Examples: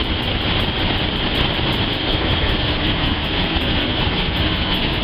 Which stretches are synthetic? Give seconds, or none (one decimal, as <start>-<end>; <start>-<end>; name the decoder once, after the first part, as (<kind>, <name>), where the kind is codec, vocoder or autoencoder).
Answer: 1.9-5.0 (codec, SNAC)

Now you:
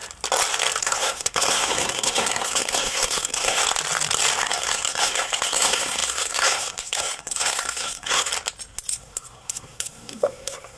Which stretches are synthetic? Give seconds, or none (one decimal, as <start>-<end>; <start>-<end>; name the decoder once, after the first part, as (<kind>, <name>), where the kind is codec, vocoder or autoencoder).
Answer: 0.8-3.6 (codec, SNAC); 4.4-8.3; 8.9-10.8

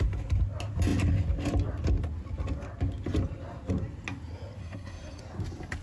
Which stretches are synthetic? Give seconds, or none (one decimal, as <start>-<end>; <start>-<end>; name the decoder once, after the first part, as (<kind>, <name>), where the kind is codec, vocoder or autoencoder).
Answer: 4.6-5.2 (codec, SNAC)